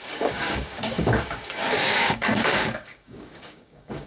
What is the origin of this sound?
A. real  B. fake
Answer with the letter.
B